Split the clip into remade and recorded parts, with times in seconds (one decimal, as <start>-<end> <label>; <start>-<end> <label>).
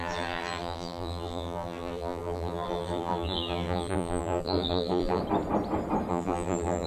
0.0-5.2 remade; 5.2-6.1 recorded; 6.1-6.9 remade